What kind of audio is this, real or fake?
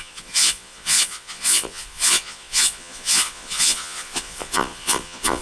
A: fake